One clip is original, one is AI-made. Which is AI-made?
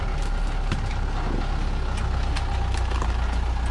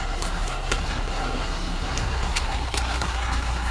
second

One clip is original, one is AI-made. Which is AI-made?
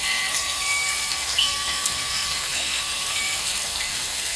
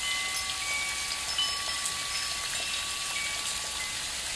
first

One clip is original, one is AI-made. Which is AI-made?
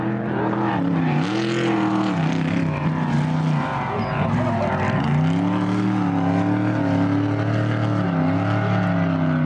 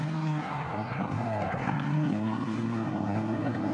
second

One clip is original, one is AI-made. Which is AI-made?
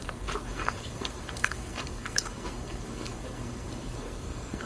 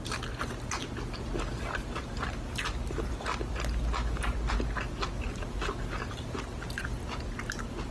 first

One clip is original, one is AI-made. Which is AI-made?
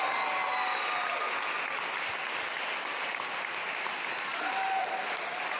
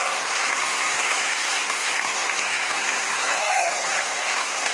second